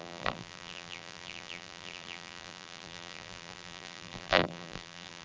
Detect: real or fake fake